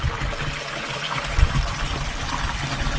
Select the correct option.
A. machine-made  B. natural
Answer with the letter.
B